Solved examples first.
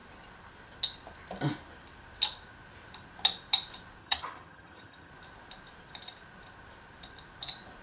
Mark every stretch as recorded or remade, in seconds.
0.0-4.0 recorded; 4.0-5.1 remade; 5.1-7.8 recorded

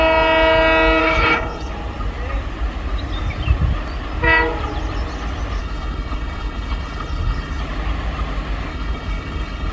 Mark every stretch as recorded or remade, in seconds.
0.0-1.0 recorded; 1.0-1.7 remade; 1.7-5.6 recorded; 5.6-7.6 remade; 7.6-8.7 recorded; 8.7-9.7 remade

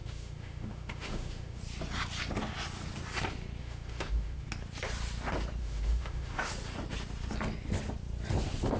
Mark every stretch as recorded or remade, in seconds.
0.0-1.6 remade; 1.6-3.6 recorded; 3.6-4.5 remade; 4.5-5.6 recorded; 5.6-6.5 remade; 6.5-8.8 recorded

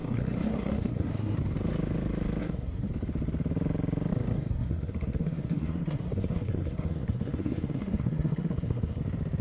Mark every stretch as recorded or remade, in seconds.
0.0-1.4 remade; 1.4-2.4 recorded; 2.4-2.9 remade; 2.9-4.1 recorded; 4.1-9.0 remade; 9.0-9.4 recorded

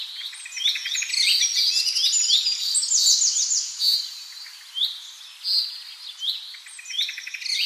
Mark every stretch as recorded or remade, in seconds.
0.0-7.7 recorded